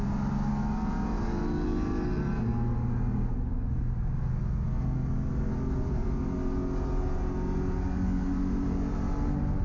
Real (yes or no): yes